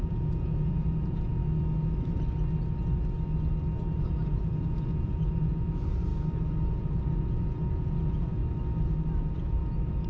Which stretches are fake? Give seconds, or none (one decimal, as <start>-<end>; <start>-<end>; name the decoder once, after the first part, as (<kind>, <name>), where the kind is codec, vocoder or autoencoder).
0.0-1.4 (vocoder, Vocos); 4.0-6.1; 6.7-8.4